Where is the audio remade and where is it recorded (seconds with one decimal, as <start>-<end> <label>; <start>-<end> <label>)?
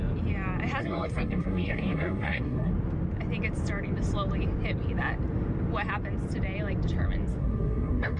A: 0.0-0.8 recorded; 0.8-2.7 remade; 2.7-7.4 recorded; 7.4-8.2 remade